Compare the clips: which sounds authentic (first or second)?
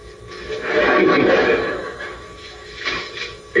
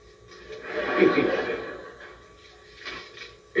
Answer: second